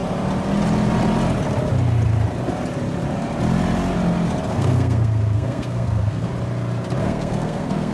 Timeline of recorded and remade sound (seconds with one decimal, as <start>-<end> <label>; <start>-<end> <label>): 0.0-4.5 recorded; 4.5-6.3 remade; 6.3-7.0 recorded; 7.0-7.9 remade